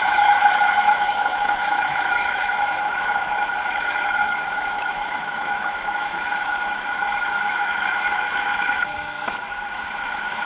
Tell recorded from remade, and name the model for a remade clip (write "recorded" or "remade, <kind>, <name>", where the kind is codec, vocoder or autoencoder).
remade, autoencoder, DAC-VAE